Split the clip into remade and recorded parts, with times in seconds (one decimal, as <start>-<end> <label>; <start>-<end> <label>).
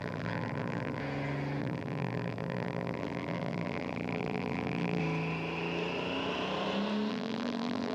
0.0-1.0 remade; 1.0-1.6 recorded; 1.6-5.0 remade; 5.0-7.1 recorded; 7.1-7.9 remade